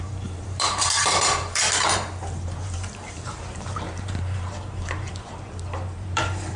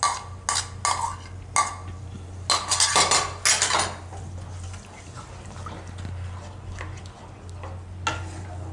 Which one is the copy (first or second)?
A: first